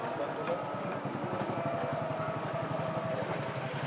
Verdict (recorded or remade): recorded